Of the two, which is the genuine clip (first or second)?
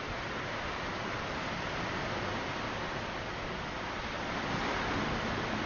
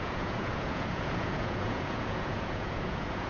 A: first